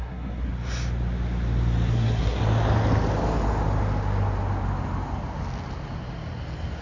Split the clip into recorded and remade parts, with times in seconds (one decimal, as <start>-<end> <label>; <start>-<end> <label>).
0.0-0.5 remade; 0.5-1.9 recorded; 1.9-2.4 remade; 2.4-6.8 recorded